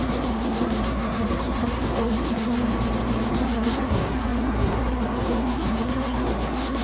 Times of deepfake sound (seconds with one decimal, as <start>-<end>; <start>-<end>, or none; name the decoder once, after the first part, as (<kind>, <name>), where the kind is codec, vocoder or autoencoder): 0.0-2.6 (codec, SNAC); 3.3-6.8